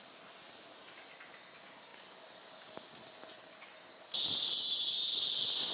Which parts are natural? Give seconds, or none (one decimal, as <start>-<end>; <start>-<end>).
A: 0.0-5.7